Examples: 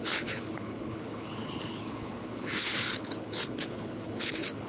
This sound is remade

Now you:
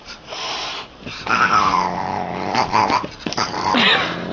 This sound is remade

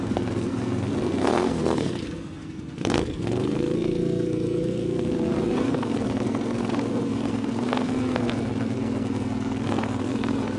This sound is remade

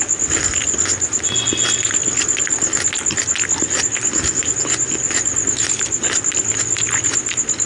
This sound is recorded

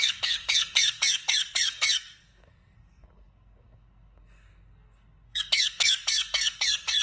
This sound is remade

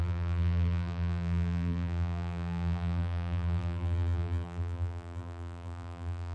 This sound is remade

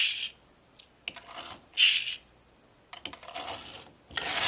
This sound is recorded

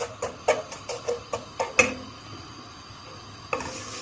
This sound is recorded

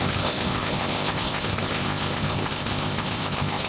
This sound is remade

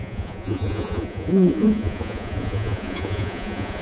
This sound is remade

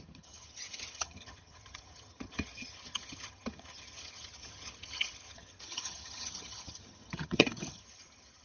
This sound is remade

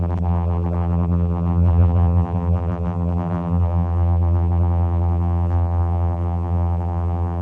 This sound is remade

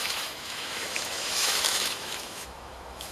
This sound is remade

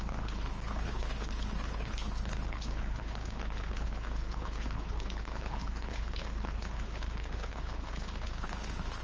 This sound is remade